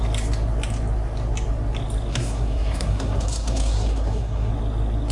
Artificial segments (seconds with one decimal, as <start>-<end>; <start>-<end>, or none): 2.1-4.5